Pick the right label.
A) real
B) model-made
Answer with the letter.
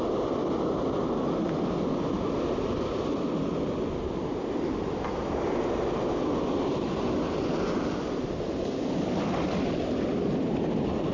A